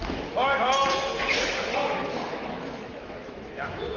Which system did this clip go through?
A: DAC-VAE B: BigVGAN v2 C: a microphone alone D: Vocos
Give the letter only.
A